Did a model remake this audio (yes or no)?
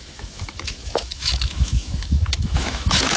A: yes